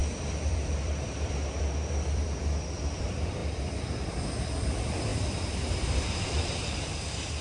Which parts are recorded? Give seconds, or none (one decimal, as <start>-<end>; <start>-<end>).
none